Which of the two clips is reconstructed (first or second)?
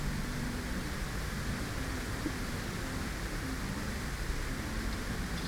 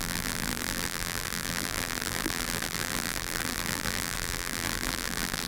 second